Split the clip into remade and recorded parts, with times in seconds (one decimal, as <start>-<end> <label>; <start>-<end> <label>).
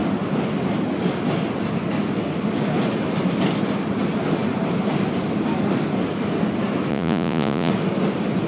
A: 0.0-6.9 recorded; 6.9-7.7 remade; 7.7-8.5 recorded